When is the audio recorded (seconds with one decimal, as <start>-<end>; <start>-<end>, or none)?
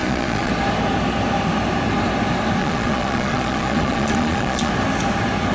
0.5-2.6; 4.7-5.5